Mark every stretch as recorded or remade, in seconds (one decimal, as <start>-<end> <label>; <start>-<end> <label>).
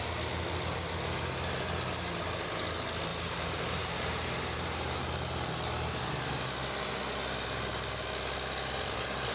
0.0-3.1 recorded; 3.1-5.0 remade; 5.0-9.3 recorded